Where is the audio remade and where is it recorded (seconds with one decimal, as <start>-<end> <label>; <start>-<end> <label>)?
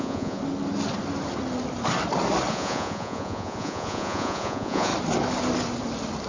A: 0.0-0.4 remade; 0.4-2.5 recorded; 2.5-4.9 remade; 4.9-6.3 recorded